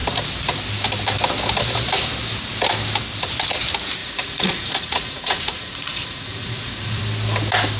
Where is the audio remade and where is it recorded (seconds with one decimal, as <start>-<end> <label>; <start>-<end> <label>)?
0.0-4.0 recorded; 4.0-7.0 remade; 7.0-7.8 recorded